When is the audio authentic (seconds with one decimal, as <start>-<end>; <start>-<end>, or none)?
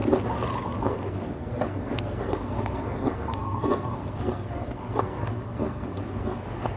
0.0-0.8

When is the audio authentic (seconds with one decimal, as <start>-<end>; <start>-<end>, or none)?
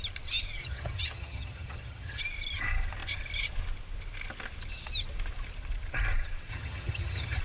0.0-0.6; 2.2-6.5